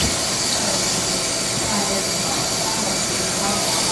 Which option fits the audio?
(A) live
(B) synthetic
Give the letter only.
A